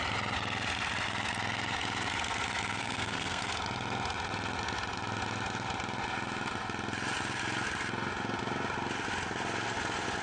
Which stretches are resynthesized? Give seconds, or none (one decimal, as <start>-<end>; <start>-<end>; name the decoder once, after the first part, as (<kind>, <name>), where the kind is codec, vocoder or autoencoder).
2.8-3.4 (codec, SNAC)